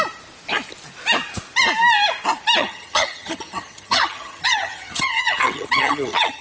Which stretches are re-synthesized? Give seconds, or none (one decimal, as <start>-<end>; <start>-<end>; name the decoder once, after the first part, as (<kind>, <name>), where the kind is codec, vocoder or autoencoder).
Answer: 2.6-6.4 (vocoder, HiFi-GAN)